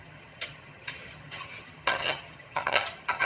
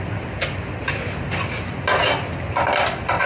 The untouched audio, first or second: second